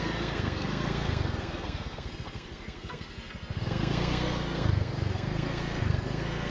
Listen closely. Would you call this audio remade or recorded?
remade